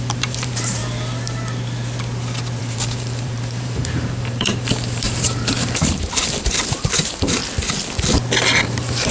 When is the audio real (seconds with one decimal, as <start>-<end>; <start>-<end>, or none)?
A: 0.8-2.6; 7.4-8.6